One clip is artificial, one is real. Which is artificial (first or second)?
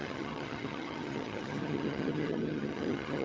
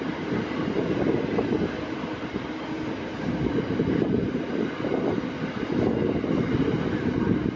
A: first